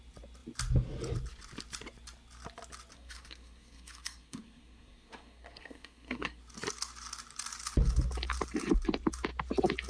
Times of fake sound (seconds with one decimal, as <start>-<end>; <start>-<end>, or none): 2.9-6.4